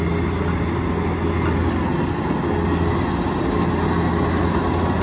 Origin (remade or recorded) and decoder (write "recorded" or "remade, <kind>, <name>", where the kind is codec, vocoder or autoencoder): recorded